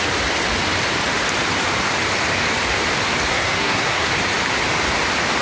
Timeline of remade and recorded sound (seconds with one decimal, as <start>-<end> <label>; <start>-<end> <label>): 0.0-3.3 recorded; 3.3-4.1 remade; 4.1-5.4 recorded